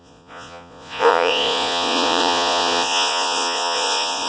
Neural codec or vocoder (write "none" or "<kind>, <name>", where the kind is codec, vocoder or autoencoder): vocoder, Vocos